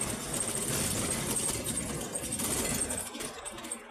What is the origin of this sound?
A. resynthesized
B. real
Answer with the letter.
B